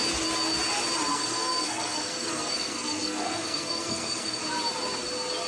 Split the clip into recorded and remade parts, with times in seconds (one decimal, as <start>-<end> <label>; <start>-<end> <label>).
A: 0.0-1.1 recorded; 1.1-4.4 remade; 4.4-5.5 recorded